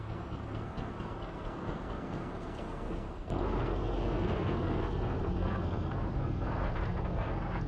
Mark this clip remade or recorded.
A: remade